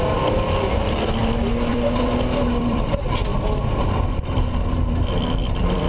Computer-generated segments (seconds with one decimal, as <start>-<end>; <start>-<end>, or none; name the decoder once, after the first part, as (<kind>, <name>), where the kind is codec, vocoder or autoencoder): 0.0-1.2 (vocoder, BigVGAN v2); 1.7-3.3; 5.1-5.9